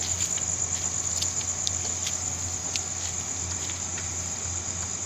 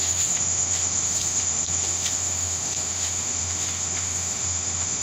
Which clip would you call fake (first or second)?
second